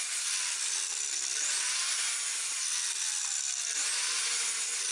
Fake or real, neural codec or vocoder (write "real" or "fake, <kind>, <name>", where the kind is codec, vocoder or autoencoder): real